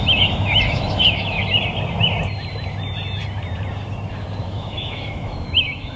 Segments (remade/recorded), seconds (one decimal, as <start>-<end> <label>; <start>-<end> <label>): 0.0-1.4 remade; 1.4-4.4 recorded; 4.4-6.0 remade